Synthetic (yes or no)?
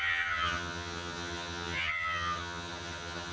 yes